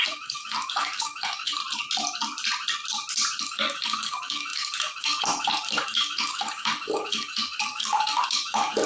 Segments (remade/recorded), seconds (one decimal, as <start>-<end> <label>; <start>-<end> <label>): 0.0-1.6 remade; 1.6-3.4 recorded; 3.4-8.9 remade